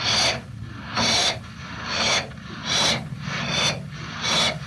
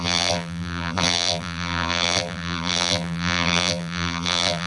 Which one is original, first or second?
first